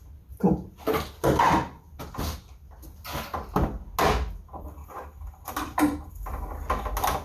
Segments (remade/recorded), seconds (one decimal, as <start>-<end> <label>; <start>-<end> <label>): 0.0-4.8 recorded; 4.8-6.1 remade; 6.1-7.2 recorded

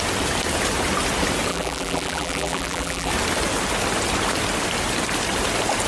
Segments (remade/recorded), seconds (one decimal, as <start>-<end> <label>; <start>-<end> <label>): 0.0-1.5 recorded; 1.5-3.1 remade; 3.1-5.9 recorded

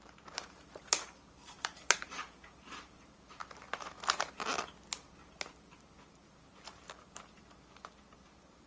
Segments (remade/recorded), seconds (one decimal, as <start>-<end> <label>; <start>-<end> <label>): 0.0-3.4 remade; 3.4-5.5 recorded; 5.5-8.7 remade

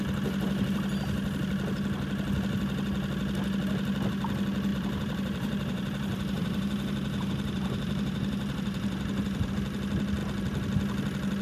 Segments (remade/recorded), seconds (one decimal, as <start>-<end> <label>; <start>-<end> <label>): 0.0-4.7 recorded; 4.7-9.5 remade; 9.5-11.4 recorded

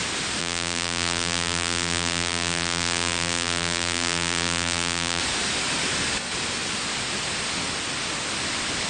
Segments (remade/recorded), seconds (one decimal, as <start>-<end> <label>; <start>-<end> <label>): 0.0-0.4 recorded; 0.4-5.2 remade; 5.2-8.9 recorded

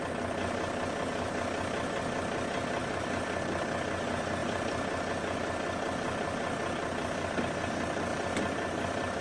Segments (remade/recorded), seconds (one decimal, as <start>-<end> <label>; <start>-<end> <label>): 0.0-2.8 recorded; 2.8-3.4 remade; 3.4-4.4 recorded; 4.4-5.1 remade; 5.1-8.1 recorded; 8.1-9.2 remade